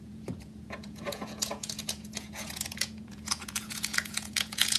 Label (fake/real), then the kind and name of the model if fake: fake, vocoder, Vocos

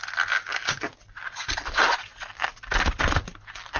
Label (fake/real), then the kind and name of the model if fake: real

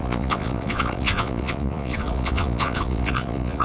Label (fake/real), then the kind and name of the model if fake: fake, vocoder, Vocos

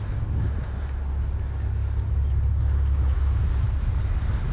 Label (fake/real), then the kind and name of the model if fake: real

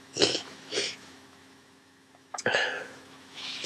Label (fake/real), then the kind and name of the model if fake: fake, autoencoder, DAC-VAE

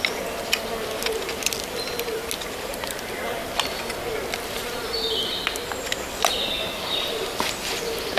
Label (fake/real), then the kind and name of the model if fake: real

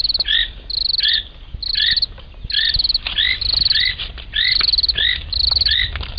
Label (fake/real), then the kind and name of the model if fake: real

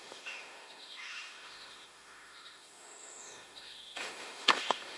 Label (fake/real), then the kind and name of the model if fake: fake, autoencoder, DAC-VAE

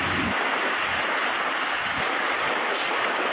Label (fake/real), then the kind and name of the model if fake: real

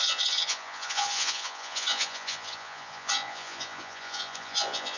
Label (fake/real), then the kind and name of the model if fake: fake, vocoder, Vocos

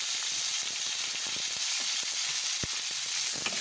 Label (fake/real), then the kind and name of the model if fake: real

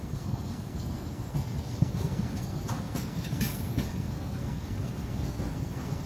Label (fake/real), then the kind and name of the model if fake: fake, codec, SNAC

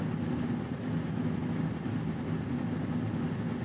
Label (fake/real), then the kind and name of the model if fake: real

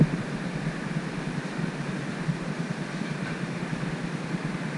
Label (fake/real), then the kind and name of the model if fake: fake, vocoder, BigVGAN v2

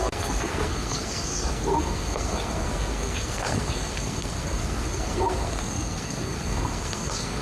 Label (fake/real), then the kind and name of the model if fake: fake, codec, SNAC